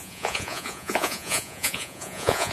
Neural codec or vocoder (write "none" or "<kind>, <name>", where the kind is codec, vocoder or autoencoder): vocoder, Vocos